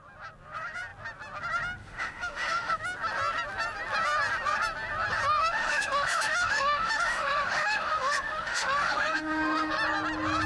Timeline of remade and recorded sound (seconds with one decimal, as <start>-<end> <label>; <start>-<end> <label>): 0.0-1.8 recorded; 1.8-2.8 remade; 2.8-5.4 recorded; 5.4-9.7 remade; 9.7-10.5 recorded